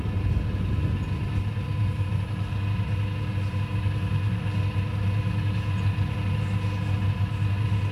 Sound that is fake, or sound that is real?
real